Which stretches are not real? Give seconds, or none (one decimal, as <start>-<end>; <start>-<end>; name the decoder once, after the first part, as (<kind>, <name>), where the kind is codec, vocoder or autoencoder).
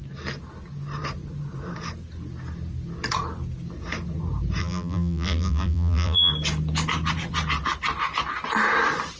4.6-6.3 (vocoder, BigVGAN v2)